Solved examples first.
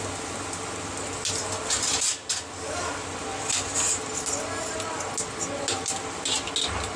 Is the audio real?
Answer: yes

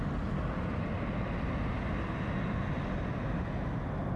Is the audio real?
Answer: yes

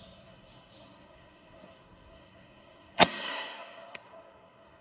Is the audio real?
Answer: no